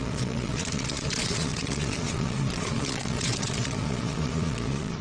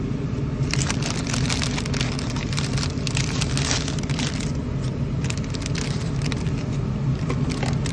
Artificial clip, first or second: first